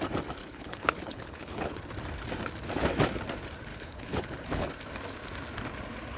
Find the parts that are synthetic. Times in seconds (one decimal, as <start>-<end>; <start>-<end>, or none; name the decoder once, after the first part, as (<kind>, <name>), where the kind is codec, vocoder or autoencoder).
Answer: 0.4-1.8 (codec, HILCodec); 3.7-4.7